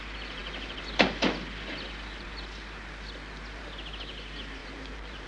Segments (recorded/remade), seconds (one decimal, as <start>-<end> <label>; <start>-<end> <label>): 0.0-4.6 recorded; 4.6-5.3 remade